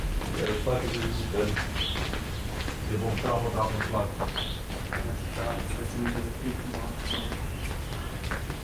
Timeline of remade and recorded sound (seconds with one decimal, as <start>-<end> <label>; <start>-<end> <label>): 0.0-8.6 recorded